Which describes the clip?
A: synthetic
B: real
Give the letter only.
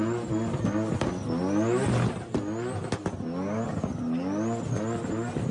B